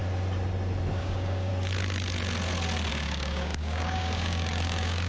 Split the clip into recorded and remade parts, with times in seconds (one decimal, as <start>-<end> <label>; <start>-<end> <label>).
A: 0.0-1.0 recorded; 1.0-1.5 remade; 1.5-2.9 recorded; 2.9-5.1 remade